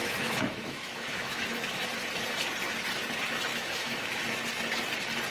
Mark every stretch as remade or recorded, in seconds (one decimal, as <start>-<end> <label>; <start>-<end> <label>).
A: 0.0-1.8 remade; 1.8-3.5 recorded; 3.5-4.1 remade; 4.1-5.3 recorded